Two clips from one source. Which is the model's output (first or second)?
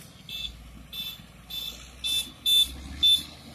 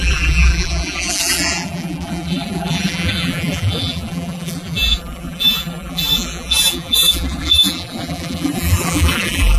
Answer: second